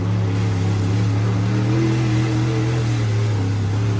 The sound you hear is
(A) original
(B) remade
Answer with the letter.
A